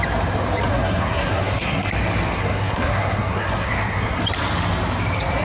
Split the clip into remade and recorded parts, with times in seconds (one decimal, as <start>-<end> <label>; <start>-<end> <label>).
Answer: 0.0-0.7 recorded; 0.7-1.9 remade; 1.9-2.3 recorded; 2.3-4.2 remade; 4.2-5.4 recorded